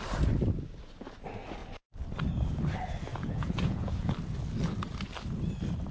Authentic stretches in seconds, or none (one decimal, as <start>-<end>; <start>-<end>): 0.0-3.1; 4.1-5.9